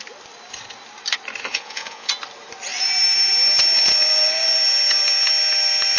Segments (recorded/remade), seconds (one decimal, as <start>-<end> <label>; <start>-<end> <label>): 0.0-1.5 recorded; 1.5-2.1 remade; 2.1-6.0 recorded